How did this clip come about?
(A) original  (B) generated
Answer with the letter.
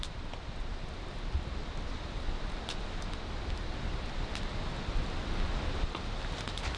A